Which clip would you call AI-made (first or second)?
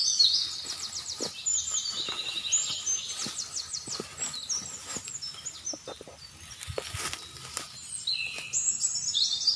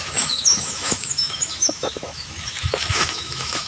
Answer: second